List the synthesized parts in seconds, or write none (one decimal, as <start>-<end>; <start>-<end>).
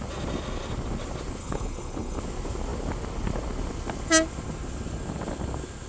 1.4-2.2